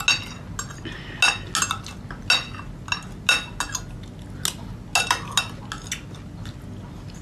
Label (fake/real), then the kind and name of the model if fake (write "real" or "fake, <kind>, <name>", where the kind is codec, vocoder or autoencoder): real